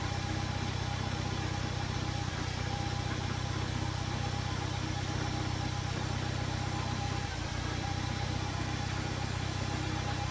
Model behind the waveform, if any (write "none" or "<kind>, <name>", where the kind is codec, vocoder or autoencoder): vocoder, BigVGAN v2